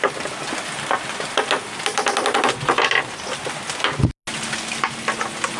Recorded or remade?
recorded